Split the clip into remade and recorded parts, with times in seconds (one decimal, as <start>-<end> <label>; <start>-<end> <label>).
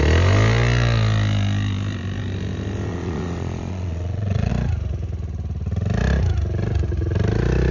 0.0-2.9 recorded; 2.9-4.5 remade; 4.5-7.7 recorded